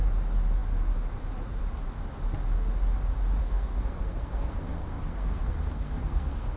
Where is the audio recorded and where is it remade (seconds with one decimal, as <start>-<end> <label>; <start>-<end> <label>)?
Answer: 0.0-3.4 recorded; 3.4-6.6 remade